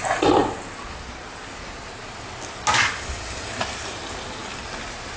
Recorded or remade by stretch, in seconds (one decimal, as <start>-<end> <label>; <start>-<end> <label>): 0.0-5.2 recorded